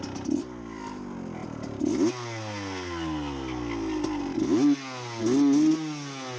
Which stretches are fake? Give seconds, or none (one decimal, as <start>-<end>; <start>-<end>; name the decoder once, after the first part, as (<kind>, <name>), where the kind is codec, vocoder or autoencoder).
none